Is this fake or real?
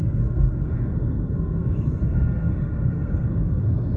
fake